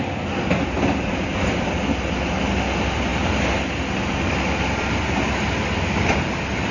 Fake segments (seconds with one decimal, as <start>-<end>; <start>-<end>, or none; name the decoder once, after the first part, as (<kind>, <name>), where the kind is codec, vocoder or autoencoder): none